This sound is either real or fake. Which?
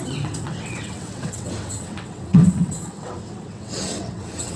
fake